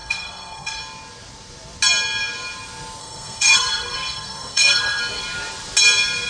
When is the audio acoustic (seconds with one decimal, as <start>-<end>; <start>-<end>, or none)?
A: 0.8-3.0; 5.0-6.3